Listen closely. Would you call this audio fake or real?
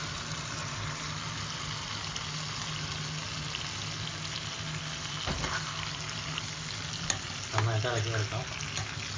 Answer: real